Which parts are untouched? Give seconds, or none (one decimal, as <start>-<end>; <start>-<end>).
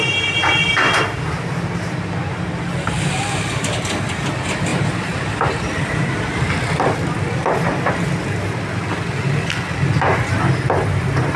0.0-11.4